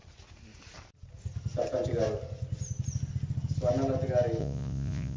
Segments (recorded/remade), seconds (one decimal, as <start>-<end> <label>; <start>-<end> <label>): 0.0-4.4 recorded; 4.4-5.2 remade